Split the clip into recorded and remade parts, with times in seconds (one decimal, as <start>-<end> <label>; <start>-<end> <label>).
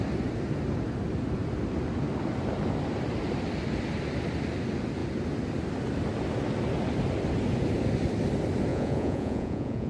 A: 0.0-8.7 recorded; 8.7-9.9 remade